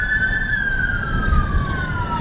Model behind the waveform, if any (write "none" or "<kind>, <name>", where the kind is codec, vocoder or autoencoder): none